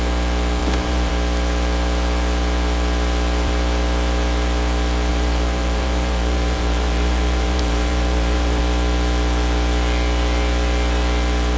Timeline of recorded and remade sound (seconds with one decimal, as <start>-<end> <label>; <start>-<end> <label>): 0.0-0.6 recorded; 0.6-1.1 remade; 1.1-5.1 recorded; 5.1-8.6 remade; 8.6-11.6 recorded